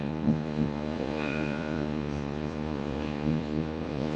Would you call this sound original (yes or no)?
no